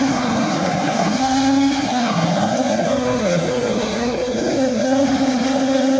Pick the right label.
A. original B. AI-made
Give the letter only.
B